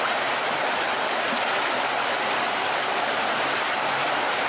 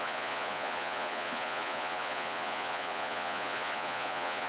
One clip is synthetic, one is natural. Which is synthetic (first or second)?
second